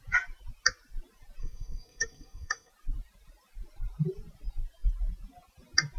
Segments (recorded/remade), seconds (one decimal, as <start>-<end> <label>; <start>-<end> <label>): 0.0-1.4 recorded; 1.4-2.7 remade; 2.7-6.0 recorded